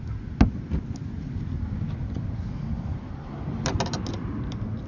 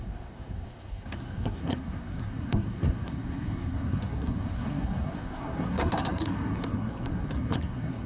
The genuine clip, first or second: first